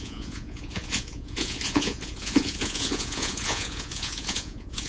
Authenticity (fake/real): fake